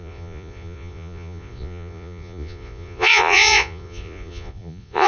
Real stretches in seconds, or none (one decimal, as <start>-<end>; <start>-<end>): none